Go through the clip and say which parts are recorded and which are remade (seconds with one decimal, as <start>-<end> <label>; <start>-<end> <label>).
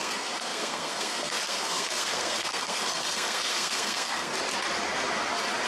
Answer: 0.0-4.3 remade; 4.3-5.7 recorded